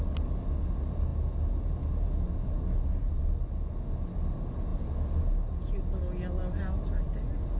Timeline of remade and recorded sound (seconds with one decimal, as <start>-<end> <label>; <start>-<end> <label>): 0.0-7.6 recorded

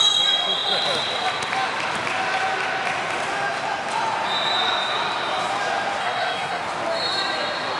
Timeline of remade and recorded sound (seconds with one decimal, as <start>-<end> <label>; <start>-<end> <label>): 0.0-6.0 recorded; 6.0-6.6 remade; 6.6-7.8 recorded

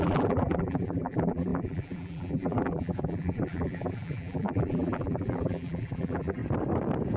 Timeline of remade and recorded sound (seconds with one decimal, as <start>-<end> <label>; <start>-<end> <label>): 0.0-6.4 remade; 6.4-7.2 recorded

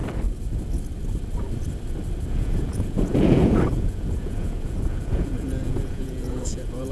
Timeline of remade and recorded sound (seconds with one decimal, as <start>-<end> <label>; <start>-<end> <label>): 0.0-2.3 recorded; 2.3-6.9 remade

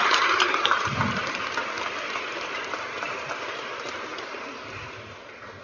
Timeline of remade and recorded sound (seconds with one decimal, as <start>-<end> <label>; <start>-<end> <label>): 0.0-5.6 remade